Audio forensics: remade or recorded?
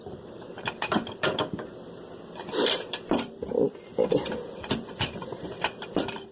remade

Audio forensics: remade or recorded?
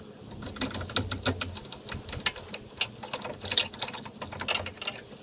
recorded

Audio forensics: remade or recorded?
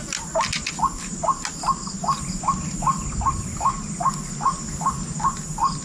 recorded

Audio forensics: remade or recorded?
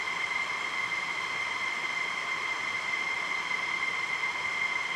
remade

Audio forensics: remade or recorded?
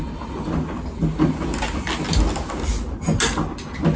recorded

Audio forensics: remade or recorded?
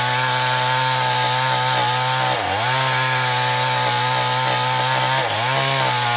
recorded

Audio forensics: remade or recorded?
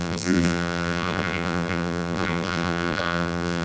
remade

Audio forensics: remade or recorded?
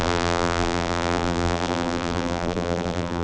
remade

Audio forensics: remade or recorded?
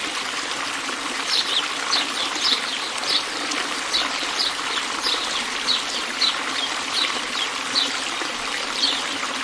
remade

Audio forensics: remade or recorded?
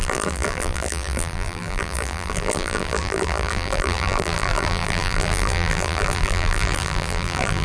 remade